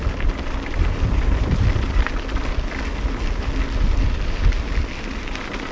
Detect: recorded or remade recorded